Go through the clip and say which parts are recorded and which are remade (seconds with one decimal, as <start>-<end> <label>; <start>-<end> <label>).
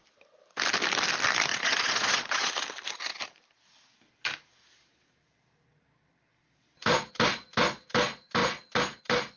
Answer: 0.0-1.5 recorded; 1.5-2.5 remade; 2.5-9.4 recorded